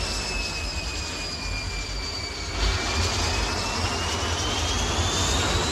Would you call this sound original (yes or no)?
yes